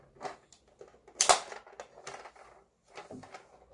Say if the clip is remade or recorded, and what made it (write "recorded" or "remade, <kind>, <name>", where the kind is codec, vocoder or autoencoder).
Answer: recorded